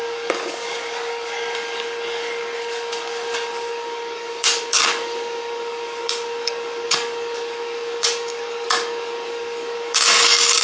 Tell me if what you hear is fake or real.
fake